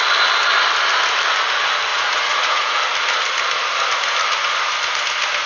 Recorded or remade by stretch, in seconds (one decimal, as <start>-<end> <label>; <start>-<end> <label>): 0.0-1.9 recorded; 1.9-2.8 remade; 2.8-5.5 recorded

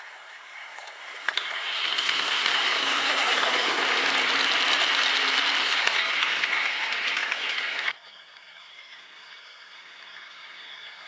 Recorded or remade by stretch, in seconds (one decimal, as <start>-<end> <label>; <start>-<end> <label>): 0.0-3.8 remade; 3.8-5.6 recorded; 5.6-11.1 remade

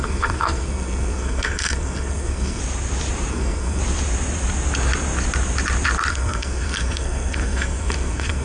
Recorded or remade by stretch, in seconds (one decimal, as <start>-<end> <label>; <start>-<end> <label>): 0.0-2.6 remade; 2.6-3.3 recorded; 3.3-3.8 remade; 3.8-6.1 recorded; 6.1-8.4 remade

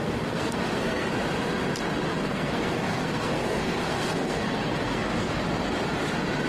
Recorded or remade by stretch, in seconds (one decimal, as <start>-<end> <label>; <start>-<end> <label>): 0.0-1.1 remade; 1.1-2.1 recorded; 2.1-5.4 remade; 5.4-6.5 recorded

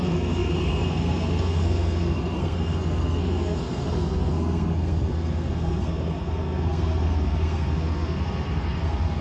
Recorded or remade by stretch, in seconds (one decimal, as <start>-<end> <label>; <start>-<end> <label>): 0.0-9.2 remade

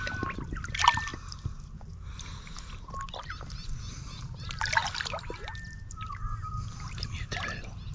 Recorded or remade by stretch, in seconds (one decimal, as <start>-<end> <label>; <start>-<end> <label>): 0.0-7.9 recorded

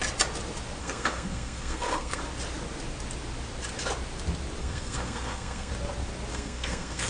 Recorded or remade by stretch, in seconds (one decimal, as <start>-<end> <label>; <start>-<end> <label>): 0.0-0.8 recorded; 0.8-2.2 remade; 2.2-4.6 recorded; 4.6-5.7 remade; 5.7-6.3 recorded; 6.3-7.1 remade